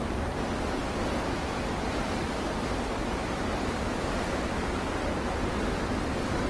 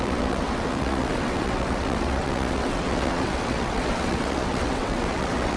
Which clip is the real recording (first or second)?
first